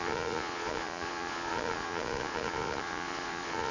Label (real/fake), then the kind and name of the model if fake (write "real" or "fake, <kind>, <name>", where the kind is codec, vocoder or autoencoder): fake, vocoder, Vocos